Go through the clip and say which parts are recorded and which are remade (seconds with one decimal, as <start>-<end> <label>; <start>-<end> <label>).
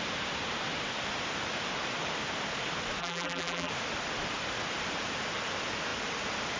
0.0-3.0 recorded; 3.0-3.7 remade; 3.7-6.6 recorded